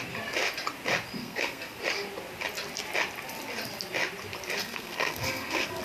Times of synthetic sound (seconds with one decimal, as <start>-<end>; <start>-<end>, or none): 1.2-1.8; 4.6-5.8